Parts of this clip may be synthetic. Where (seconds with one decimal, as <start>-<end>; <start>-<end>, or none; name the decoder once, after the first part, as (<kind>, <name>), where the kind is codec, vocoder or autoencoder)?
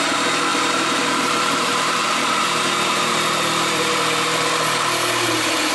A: 0.5-3.9 (vocoder, BigVGAN v2)